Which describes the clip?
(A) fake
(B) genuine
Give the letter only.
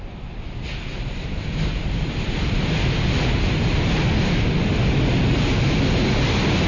B